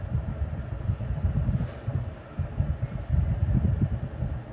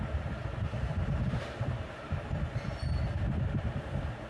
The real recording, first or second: first